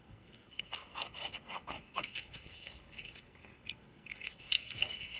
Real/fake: fake